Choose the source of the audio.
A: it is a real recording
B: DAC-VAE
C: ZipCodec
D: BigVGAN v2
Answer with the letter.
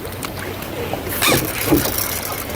A